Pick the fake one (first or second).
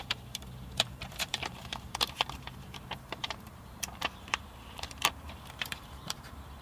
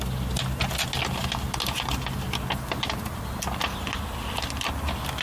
first